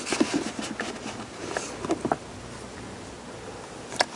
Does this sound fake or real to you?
real